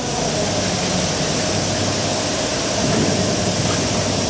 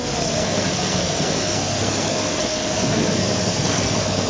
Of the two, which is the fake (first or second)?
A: second